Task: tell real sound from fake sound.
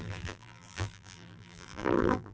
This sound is fake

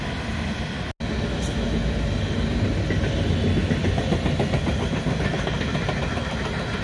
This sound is real